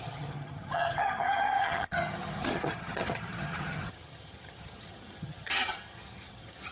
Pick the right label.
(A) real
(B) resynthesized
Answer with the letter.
B